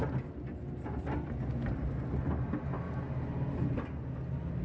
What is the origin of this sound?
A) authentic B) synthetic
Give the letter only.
A